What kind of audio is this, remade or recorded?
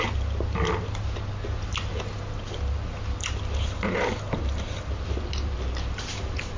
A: recorded